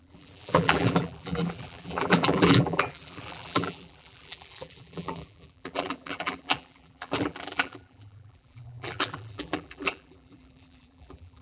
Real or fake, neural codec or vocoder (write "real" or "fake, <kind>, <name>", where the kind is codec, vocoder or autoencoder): fake, vocoder, BigVGAN v2